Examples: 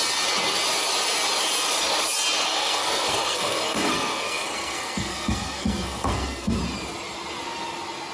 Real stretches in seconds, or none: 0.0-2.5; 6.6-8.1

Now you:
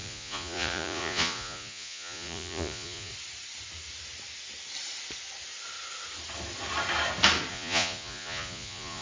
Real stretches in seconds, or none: 3.1-7.5

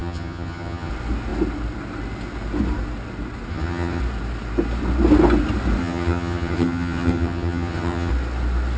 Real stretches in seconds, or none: 0.9-3.5; 4.0-5.8; 8.1-8.8

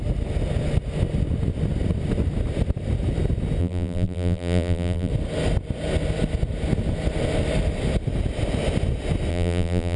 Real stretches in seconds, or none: 0.0-3.6; 5.1-9.3

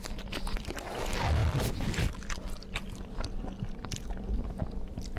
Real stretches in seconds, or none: 0.0-5.2

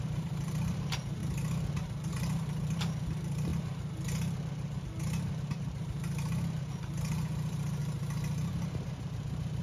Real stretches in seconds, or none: 1.2-2.1; 3.5-5.6; 7.8-8.5

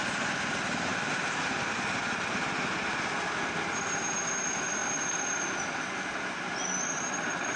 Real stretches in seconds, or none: 0.0-7.6